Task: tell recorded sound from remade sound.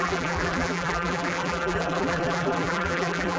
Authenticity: remade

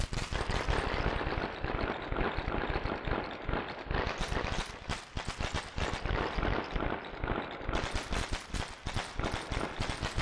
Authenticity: recorded